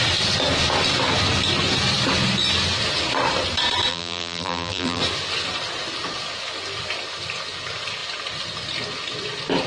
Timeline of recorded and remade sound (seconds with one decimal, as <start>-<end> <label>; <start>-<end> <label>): 0.0-3.9 recorded; 3.9-5.0 remade; 5.0-9.7 recorded